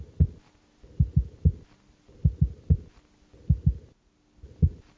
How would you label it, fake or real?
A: real